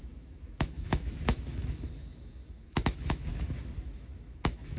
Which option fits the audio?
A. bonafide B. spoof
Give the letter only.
B